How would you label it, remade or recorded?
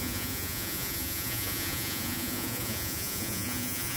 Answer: remade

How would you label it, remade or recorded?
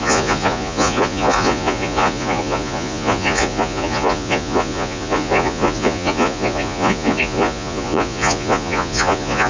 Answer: remade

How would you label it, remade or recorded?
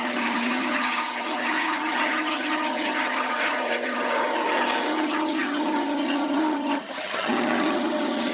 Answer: remade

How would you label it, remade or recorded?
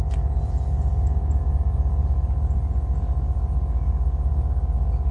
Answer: recorded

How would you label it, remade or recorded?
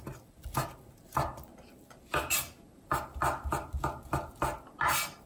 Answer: recorded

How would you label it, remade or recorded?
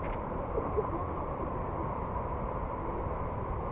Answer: recorded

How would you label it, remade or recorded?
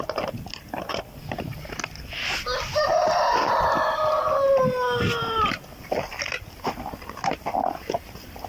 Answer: recorded